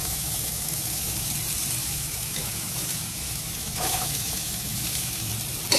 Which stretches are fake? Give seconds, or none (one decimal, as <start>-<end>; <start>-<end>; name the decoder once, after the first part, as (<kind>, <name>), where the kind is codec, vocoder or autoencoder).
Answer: 0.0-1.3 (autoencoder, DAC-VAE); 1.8-5.3